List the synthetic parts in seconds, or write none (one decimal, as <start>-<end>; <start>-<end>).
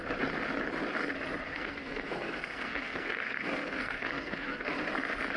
1.5-4.7